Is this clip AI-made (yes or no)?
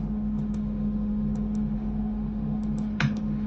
yes